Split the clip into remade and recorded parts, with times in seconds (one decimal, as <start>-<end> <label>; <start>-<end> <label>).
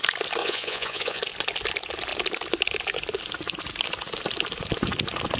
0.0-0.4 recorded; 0.4-1.2 remade; 1.2-5.4 recorded